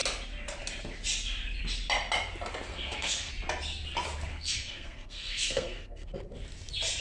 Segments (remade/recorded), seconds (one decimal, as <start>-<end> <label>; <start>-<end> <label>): 0.0-2.7 recorded; 2.7-3.3 remade; 3.3-4.3 recorded; 4.3-6.1 remade; 6.1-7.0 recorded